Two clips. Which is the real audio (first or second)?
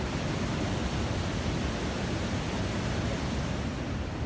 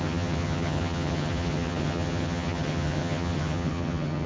first